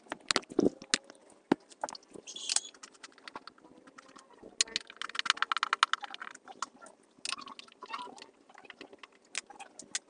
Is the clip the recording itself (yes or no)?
yes